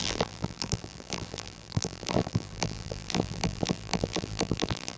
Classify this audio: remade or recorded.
remade